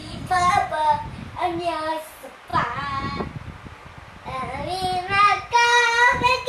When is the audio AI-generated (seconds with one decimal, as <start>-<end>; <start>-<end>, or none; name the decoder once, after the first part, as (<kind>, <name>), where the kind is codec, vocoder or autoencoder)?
0.0-0.5 (codec, SNAC)